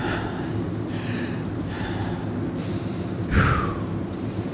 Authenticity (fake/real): real